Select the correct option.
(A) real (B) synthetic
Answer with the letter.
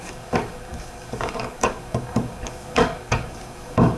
B